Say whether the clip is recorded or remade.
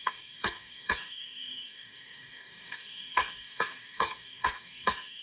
remade